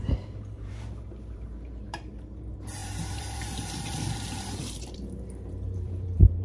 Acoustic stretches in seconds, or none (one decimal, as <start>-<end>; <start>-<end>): none